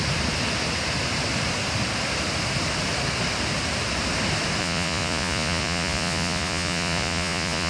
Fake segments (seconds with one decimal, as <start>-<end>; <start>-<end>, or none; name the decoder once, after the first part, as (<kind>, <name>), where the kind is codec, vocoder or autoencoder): 4.6-7.7 (vocoder, Vocos)